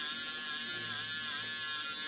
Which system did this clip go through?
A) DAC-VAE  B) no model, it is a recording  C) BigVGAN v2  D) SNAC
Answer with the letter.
B